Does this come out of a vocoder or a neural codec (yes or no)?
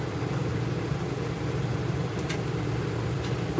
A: yes